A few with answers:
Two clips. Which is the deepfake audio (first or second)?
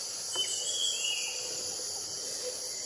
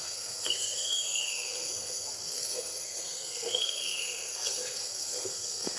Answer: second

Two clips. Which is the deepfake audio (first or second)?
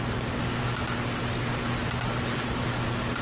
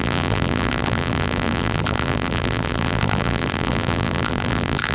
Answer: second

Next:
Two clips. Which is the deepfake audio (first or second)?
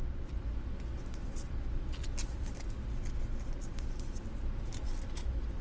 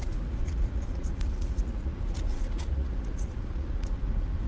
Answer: second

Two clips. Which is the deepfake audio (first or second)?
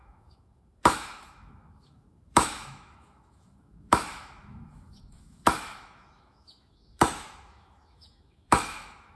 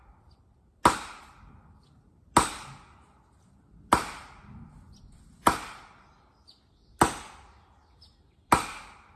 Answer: first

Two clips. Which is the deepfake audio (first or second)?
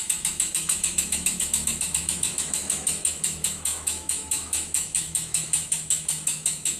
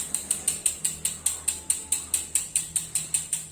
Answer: first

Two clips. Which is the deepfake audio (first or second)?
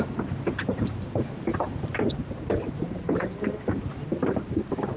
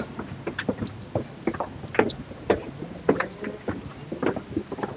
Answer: first